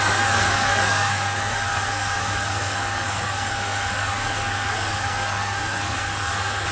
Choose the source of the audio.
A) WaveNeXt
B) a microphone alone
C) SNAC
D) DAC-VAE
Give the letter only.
C